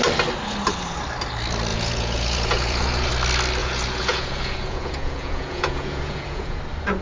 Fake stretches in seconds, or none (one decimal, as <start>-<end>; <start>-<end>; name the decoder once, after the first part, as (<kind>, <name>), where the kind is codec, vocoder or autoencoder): 1.7-3.1 (vocoder, Vocos); 3.6-6.6